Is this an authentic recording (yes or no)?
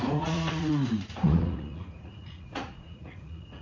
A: no